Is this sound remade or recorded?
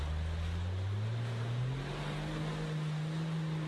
recorded